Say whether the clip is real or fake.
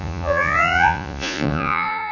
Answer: fake